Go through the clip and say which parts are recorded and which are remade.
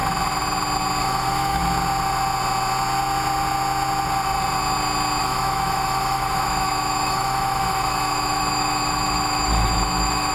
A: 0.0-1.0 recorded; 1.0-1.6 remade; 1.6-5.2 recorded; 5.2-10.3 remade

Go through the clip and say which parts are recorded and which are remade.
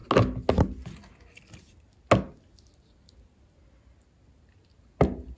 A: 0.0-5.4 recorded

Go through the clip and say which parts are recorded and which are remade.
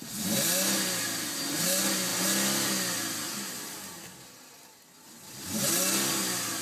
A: 0.0-6.6 recorded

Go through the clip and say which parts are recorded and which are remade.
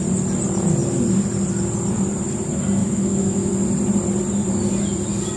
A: 0.0-2.8 recorded; 2.8-3.5 remade; 3.5-5.4 recorded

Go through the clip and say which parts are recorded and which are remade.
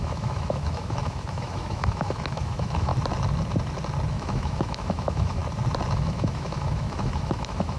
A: 0.0-2.9 remade; 2.9-4.1 recorded; 4.1-5.4 remade; 5.4-5.9 recorded; 5.9-7.8 remade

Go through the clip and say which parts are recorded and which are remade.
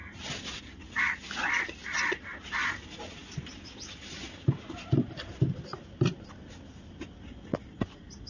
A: 0.0-8.3 recorded